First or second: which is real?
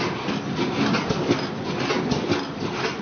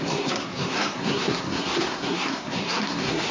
first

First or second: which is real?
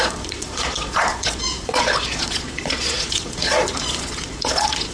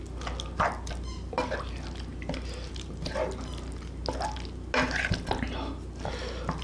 second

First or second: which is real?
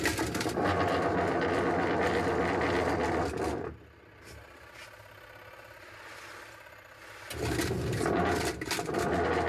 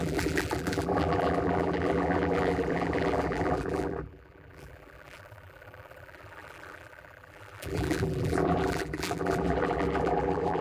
first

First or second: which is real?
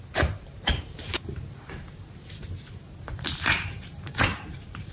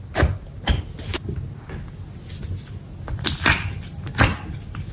second